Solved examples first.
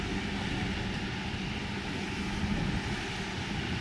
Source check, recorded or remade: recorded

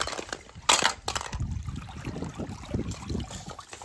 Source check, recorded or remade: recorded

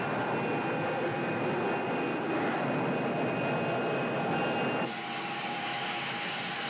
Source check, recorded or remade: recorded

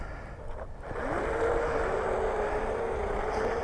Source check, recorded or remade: recorded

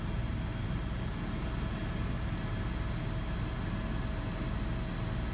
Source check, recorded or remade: recorded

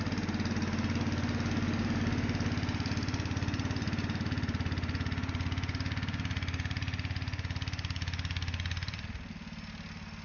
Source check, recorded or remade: recorded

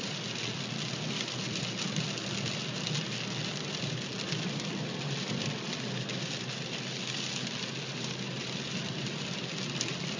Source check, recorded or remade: recorded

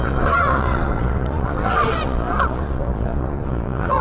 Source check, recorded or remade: remade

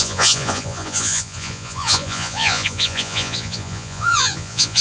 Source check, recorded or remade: remade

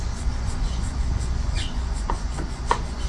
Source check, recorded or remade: remade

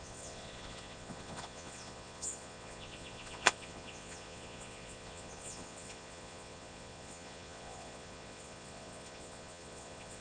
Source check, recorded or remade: remade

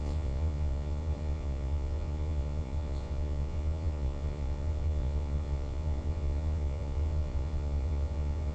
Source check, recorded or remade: remade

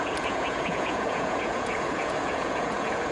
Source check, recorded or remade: remade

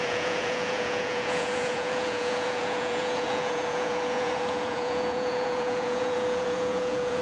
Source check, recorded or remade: remade